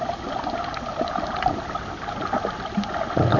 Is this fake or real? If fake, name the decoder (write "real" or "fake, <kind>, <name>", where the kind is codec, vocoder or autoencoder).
real